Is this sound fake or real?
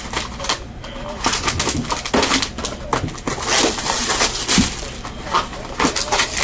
real